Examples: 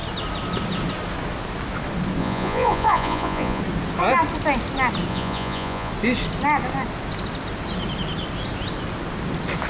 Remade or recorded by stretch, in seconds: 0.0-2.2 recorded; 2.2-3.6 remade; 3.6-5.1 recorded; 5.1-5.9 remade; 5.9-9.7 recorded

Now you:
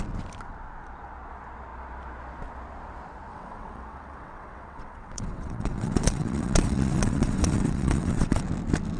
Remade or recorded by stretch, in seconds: 0.0-3.3 recorded; 3.3-8.4 remade; 8.4-9.0 recorded

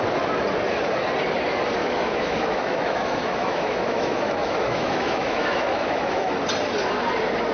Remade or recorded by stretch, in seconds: 0.0-1.8 recorded; 1.8-6.3 remade; 6.3-7.5 recorded

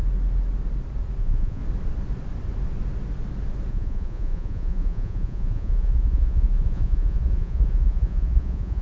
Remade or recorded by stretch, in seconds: 0.0-1.2 recorded; 1.2-1.6 remade; 1.6-3.7 recorded; 3.7-8.8 remade

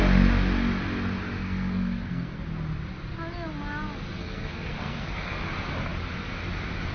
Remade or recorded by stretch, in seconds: 0.0-1.4 recorded; 1.4-2.4 remade; 2.4-4.2 recorded; 4.2-5.5 remade; 5.5-6.9 recorded